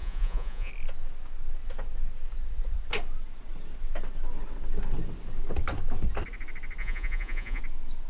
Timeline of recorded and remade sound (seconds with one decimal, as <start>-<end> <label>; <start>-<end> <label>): 0.0-0.7 remade; 0.7-6.8 recorded; 6.8-7.6 remade; 7.6-8.1 recorded